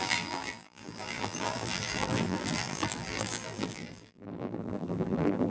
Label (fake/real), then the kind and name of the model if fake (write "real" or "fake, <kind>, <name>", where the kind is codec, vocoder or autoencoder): fake, vocoder, BigVGAN v2